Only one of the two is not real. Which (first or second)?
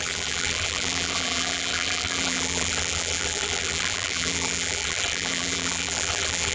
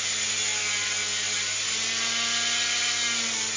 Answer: first